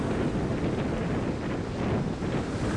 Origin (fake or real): real